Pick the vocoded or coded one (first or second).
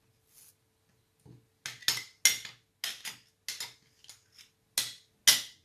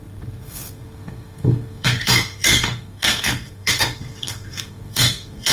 second